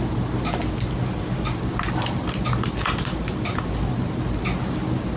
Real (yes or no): yes